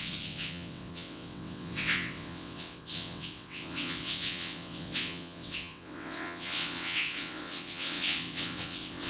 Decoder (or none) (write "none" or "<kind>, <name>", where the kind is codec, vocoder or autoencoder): vocoder, WaveNeXt